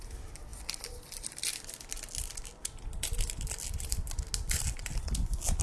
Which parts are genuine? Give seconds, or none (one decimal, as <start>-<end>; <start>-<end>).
0.0-5.6